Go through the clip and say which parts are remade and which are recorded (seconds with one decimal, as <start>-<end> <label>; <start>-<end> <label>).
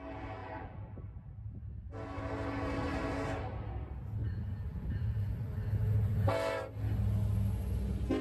0.0-0.4 recorded; 0.4-1.6 remade; 1.6-4.2 recorded; 4.2-6.3 remade; 6.3-8.2 recorded